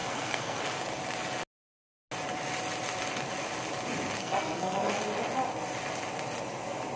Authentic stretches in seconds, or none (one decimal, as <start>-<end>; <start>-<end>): 0.6-4.2; 5.0-7.0